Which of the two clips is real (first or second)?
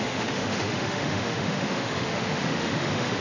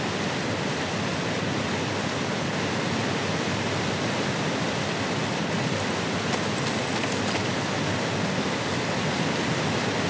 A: second